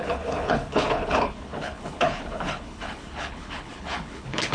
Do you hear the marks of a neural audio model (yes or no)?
yes